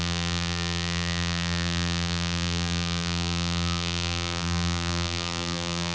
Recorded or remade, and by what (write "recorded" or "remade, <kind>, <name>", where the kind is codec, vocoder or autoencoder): remade, vocoder, BigVGAN v2